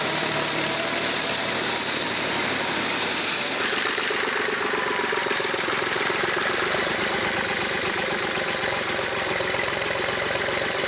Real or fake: fake